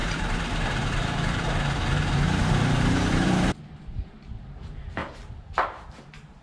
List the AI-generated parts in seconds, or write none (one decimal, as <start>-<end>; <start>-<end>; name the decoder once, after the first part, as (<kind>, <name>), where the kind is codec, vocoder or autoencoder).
0.0-5.0 (vocoder, BigVGAN v2); 6.0-6.4